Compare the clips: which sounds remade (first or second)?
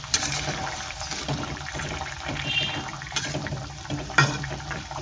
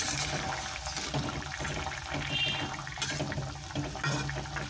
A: first